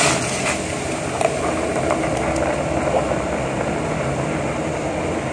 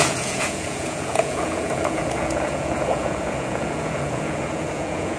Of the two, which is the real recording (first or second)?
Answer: first